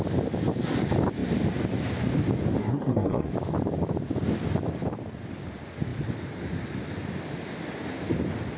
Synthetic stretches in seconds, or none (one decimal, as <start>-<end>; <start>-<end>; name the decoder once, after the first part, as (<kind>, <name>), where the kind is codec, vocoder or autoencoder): 2.6-3.3 (codec, SNAC)